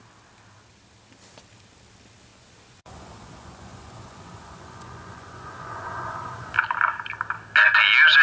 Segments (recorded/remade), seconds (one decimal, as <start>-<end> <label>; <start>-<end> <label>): 0.0-2.3 recorded; 2.3-6.5 remade; 6.5-8.2 recorded